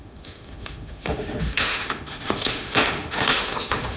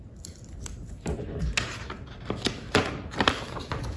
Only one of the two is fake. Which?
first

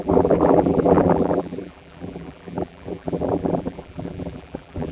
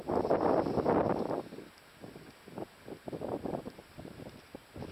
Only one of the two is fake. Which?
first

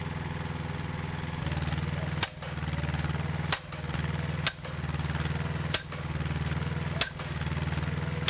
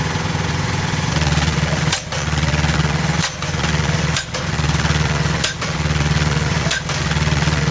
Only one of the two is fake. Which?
second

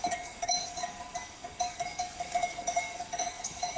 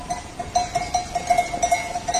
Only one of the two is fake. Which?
first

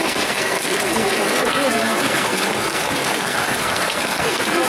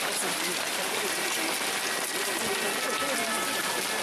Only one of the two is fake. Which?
first